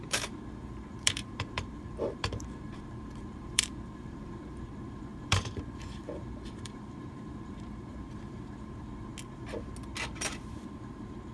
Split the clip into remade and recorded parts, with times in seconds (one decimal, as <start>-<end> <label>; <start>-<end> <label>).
0.0-9.1 remade; 9.1-10.5 recorded; 10.5-11.3 remade